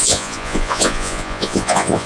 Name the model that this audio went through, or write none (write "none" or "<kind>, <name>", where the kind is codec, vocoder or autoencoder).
vocoder, Vocos